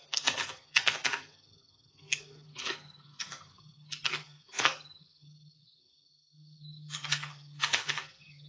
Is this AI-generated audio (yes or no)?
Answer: yes